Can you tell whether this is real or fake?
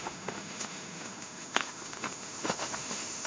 fake